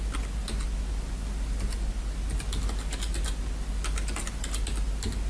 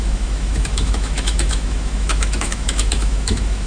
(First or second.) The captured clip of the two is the first